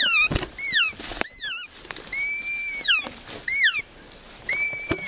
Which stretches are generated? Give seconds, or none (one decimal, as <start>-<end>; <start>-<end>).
0.0-5.1